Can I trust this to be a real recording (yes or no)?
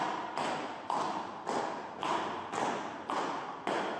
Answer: yes